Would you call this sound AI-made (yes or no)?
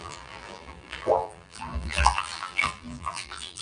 yes